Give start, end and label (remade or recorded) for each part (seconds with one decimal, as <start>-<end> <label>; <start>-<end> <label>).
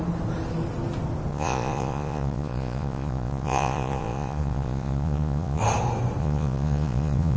0.0-1.3 recorded; 1.3-5.6 remade; 5.6-6.2 recorded; 6.2-7.4 remade